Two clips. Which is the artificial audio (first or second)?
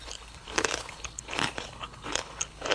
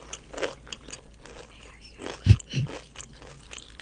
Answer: first